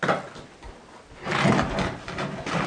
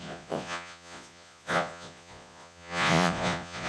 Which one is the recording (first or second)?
first